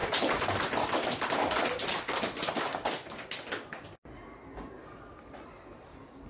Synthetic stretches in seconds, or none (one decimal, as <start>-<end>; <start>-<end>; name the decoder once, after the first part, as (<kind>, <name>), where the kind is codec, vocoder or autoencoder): none